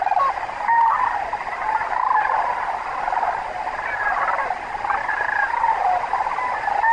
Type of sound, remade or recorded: recorded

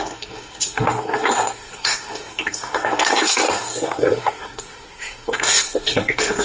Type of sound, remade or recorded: remade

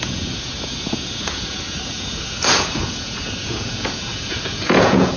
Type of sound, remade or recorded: remade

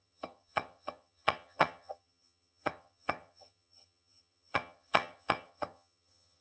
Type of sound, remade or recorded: remade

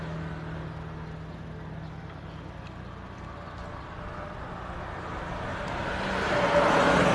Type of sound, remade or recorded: recorded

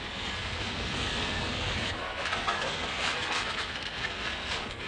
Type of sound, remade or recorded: remade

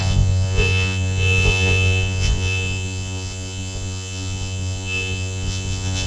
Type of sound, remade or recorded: remade